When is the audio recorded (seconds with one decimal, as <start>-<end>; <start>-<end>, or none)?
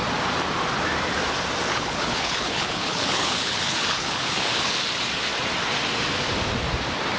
0.0-1.7; 4.7-7.2